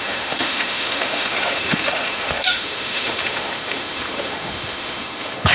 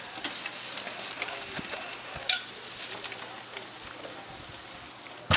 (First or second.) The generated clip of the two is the first